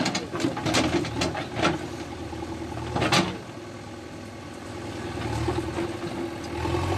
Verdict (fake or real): real